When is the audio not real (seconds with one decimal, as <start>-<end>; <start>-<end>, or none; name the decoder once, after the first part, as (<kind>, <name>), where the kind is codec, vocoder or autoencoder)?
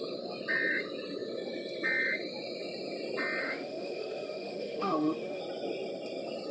3.4-5.4 (autoencoder, DAC-VAE)